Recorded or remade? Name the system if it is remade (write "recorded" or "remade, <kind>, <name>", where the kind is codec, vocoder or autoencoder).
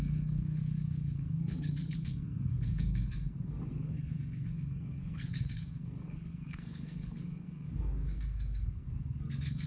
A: remade, codec, SNAC